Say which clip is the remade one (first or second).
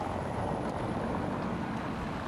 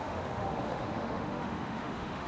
second